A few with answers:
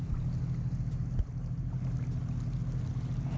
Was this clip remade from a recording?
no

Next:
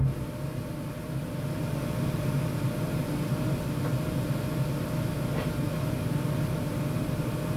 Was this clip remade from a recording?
no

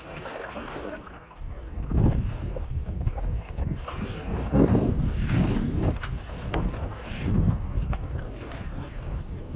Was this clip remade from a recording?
yes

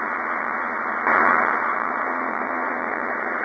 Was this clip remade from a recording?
yes